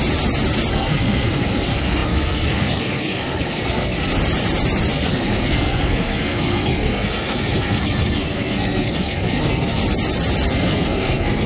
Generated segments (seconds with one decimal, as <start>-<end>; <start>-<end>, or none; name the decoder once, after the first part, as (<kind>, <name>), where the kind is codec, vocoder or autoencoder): 0.7-4.1 (codec, SNAC); 4.9-9.8; 10.5-11.5